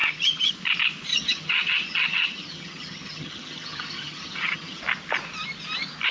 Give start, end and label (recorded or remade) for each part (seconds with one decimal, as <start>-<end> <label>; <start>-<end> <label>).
0.0-0.5 remade; 0.5-1.1 recorded; 1.1-4.8 remade; 4.8-6.1 recorded

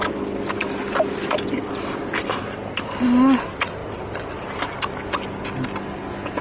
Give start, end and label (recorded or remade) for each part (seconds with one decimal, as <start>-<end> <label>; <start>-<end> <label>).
0.0-6.4 recorded

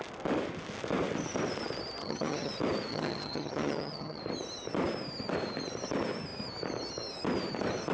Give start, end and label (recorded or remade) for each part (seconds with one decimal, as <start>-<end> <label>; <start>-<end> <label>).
0.0-2.0 recorded; 2.0-2.5 remade; 2.5-2.9 recorded; 2.9-4.2 remade; 4.2-7.9 recorded

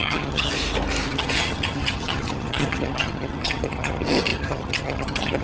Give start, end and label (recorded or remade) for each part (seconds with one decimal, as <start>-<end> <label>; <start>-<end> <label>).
0.0-0.5 remade; 0.5-1.1 recorded; 1.1-5.4 remade

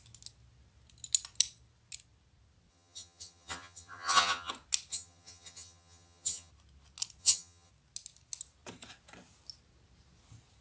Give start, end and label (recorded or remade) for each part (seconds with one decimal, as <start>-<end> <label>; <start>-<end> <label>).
0.0-2.7 recorded; 2.7-4.5 remade; 4.5-4.9 recorded; 4.9-6.5 remade; 6.5-7.2 recorded; 7.2-7.7 remade; 7.7-10.6 recorded